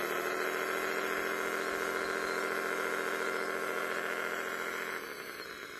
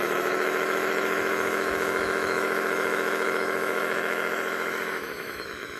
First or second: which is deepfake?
second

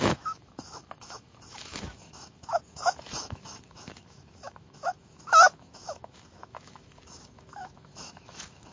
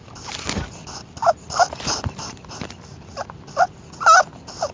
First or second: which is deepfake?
first